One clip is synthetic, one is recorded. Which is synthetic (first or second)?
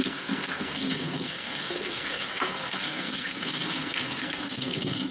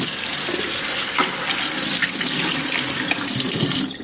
first